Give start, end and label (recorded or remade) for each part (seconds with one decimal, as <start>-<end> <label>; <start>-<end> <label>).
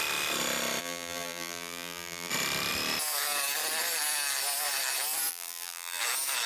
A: 0.0-0.8 recorded; 0.8-2.3 remade; 2.3-5.3 recorded; 5.3-6.0 remade; 6.0-6.5 recorded